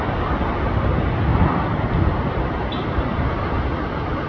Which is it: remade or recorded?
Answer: recorded